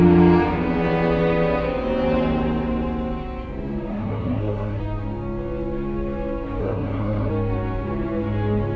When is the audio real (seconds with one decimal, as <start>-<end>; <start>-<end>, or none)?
0.0-3.9; 4.8-6.6; 7.3-8.8